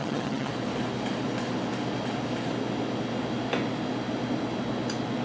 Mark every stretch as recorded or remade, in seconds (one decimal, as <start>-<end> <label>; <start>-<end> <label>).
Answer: 0.0-0.5 remade; 0.5-5.2 recorded